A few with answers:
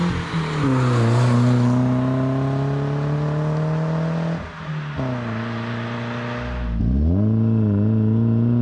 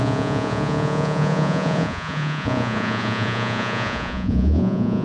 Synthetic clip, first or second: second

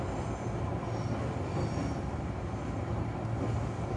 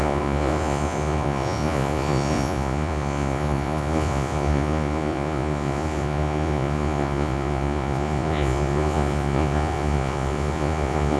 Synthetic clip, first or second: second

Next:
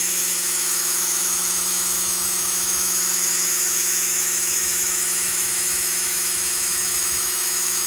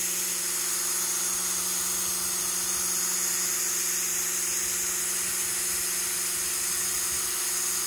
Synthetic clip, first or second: first